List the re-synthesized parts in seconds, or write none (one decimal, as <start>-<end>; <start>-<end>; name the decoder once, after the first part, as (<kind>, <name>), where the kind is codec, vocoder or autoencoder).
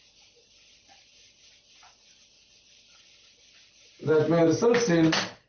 none